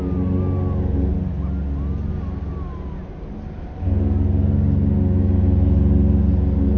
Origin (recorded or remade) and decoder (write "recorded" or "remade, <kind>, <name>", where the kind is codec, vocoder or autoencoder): recorded